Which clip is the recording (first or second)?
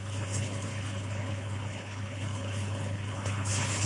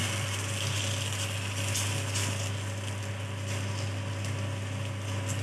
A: second